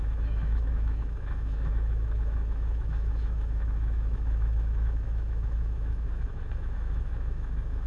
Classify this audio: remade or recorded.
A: remade